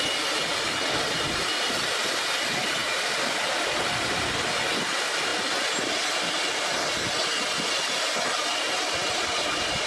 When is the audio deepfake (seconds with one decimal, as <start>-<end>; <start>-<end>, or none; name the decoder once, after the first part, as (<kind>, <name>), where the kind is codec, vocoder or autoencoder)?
none